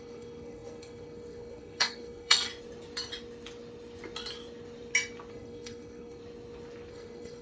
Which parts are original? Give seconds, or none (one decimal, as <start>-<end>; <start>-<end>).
2.5-5.3; 6.2-6.9